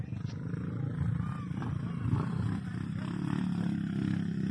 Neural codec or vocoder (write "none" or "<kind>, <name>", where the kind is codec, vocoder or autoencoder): none